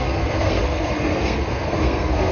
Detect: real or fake fake